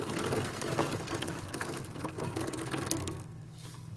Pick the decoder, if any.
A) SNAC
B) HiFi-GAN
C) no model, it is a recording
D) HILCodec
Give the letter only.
A